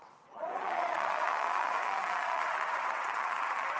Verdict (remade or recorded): remade